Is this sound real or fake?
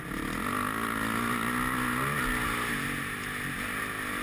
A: real